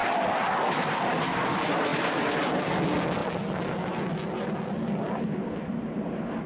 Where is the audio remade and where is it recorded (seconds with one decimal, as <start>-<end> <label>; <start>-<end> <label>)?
0.0-6.5 recorded